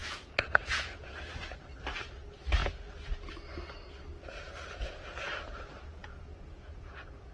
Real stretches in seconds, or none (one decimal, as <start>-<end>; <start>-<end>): 1.1-6.0